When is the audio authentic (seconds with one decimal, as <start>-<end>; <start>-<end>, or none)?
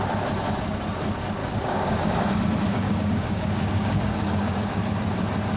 0.0-1.4; 2.1-2.7; 4.8-5.6